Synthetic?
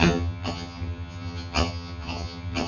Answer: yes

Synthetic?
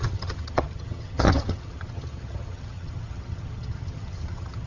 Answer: yes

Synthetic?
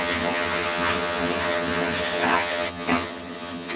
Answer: yes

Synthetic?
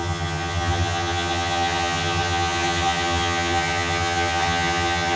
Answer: yes